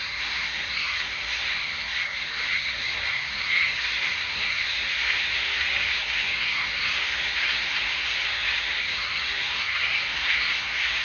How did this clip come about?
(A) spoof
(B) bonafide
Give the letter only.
A